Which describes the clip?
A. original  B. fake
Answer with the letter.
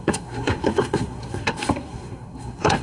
B